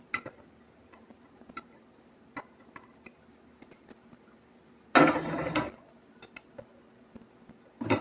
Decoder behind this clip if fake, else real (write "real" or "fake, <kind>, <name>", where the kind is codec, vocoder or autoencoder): real